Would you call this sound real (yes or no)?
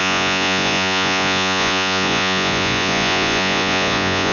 no